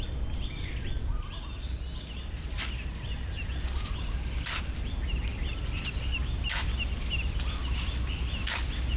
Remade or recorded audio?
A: recorded